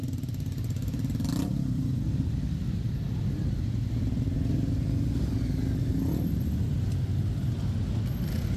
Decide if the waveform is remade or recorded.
recorded